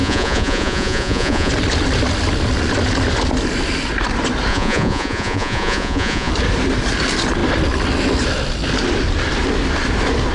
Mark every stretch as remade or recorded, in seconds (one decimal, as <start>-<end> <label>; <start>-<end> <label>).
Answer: 0.0-1.5 remade; 1.5-4.5 recorded; 4.5-6.3 remade; 6.3-10.3 recorded